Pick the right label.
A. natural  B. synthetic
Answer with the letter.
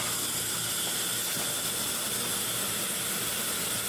A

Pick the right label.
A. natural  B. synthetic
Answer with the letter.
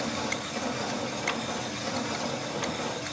A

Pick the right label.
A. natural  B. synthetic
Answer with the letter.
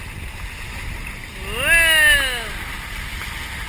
A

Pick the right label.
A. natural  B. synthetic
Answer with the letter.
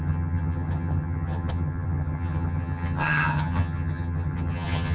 B